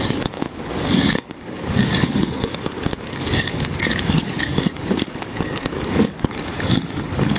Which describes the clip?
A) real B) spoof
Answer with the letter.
B